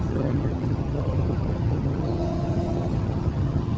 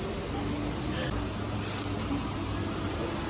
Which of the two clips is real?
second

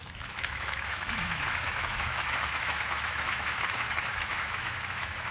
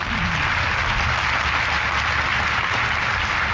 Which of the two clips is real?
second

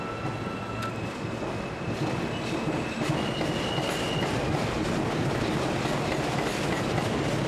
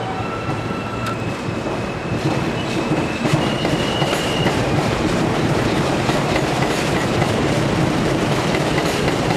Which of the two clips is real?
first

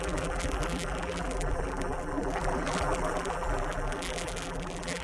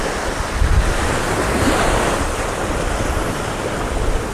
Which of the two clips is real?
second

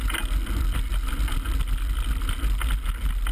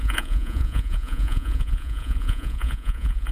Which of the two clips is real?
first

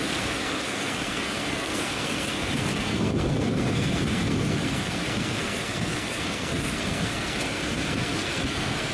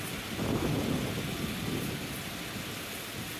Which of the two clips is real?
second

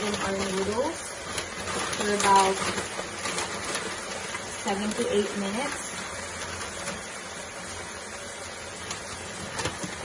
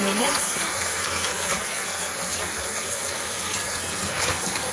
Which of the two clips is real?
first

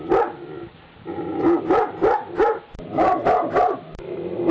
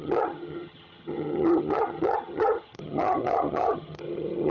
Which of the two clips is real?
first